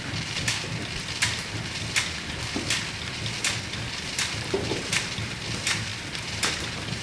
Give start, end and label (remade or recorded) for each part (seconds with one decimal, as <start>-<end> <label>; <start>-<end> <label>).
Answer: 0.0-7.0 recorded

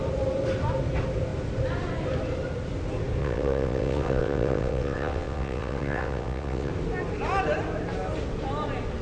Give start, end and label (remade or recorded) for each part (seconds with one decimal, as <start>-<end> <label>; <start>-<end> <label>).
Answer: 0.0-3.2 recorded; 3.2-6.7 remade; 6.7-9.0 recorded

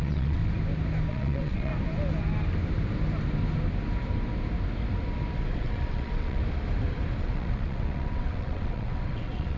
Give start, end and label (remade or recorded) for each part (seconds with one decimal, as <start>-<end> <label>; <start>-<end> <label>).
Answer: 0.0-0.4 remade; 0.4-1.1 recorded; 1.1-1.7 remade; 1.7-5.4 recorded; 5.4-6.4 remade; 6.4-7.2 recorded; 7.2-9.6 remade

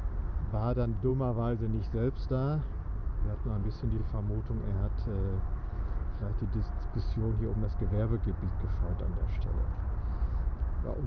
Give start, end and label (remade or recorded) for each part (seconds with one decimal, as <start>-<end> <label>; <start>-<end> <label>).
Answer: 0.0-11.1 recorded

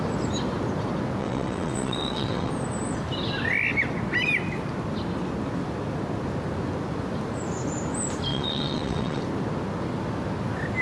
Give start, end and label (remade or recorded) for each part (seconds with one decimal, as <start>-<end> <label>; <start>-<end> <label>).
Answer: 0.0-1.2 recorded; 1.2-2.5 remade; 2.5-8.3 recorded; 8.3-9.2 remade; 9.2-10.8 recorded

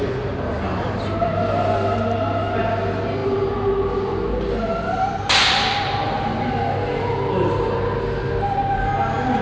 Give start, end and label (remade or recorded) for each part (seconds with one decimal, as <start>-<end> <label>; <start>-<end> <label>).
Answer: 0.0-9.4 recorded

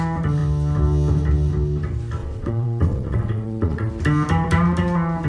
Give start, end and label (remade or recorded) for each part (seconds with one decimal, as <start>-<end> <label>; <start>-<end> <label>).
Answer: 0.0-2.2 recorded; 2.2-3.9 remade; 3.9-5.3 recorded